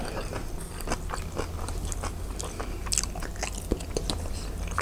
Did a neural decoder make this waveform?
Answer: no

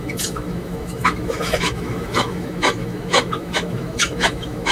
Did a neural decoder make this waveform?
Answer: yes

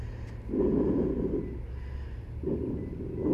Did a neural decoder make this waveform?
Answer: no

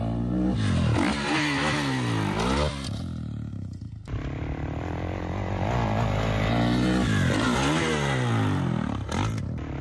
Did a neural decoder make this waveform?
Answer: no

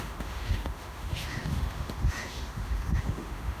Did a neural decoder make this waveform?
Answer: yes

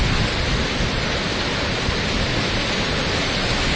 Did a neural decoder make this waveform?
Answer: no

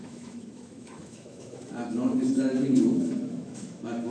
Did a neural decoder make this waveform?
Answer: yes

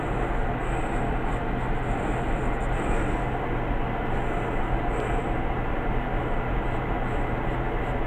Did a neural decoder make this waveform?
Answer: no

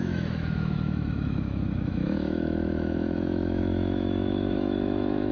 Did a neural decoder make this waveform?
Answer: yes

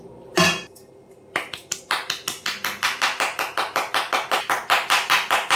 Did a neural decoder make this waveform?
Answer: no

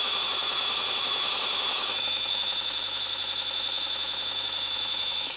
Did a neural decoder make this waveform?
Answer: yes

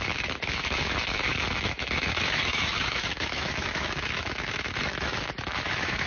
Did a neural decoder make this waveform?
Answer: yes